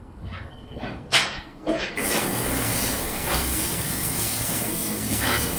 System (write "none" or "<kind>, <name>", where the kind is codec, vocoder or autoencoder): codec, SNAC